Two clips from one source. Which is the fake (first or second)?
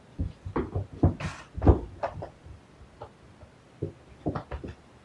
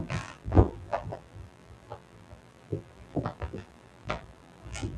second